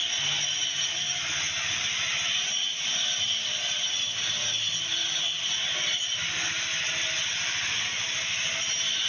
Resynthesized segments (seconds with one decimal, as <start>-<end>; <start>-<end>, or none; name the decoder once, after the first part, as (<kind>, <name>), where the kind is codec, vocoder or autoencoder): none